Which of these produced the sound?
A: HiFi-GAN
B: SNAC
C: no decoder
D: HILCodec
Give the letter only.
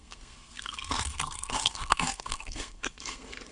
B